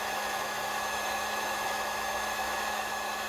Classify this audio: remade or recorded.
remade